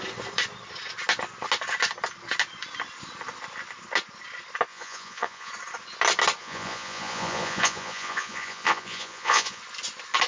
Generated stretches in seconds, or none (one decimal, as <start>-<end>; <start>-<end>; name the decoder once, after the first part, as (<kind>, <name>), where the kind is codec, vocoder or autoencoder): 4.7-5.5 (vocoder, Vocos); 6.4-9.6